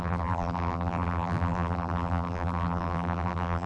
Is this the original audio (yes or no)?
no